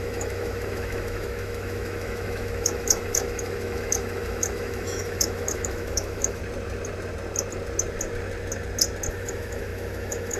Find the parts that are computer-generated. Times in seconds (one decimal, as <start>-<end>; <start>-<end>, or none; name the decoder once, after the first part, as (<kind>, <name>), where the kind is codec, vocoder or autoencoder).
0.0-6.4 (autoencoder, DAC-VAE); 9.1-10.4